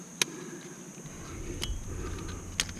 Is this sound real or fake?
real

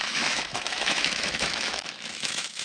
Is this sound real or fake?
fake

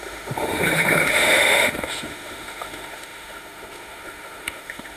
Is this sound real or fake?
fake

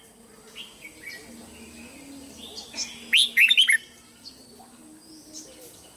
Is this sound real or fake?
real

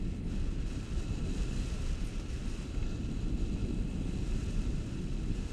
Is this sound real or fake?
real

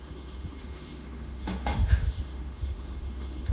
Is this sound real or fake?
fake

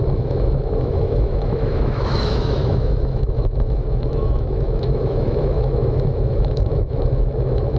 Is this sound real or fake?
fake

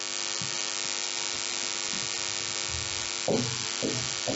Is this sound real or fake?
real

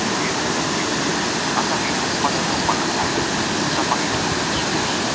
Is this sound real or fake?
real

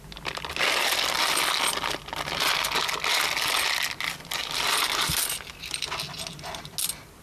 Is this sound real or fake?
real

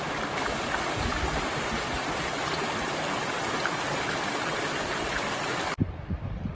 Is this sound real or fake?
real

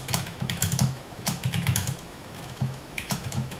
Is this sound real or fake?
fake